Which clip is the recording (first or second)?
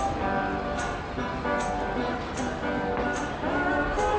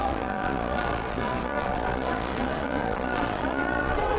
first